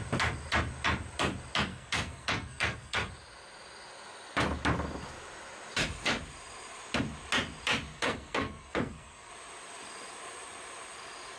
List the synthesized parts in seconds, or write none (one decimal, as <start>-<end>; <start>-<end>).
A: 1.7-3.1; 7.9-9.3